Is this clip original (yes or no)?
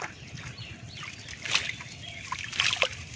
yes